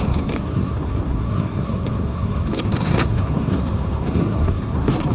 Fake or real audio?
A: fake